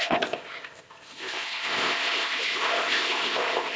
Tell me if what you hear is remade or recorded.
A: remade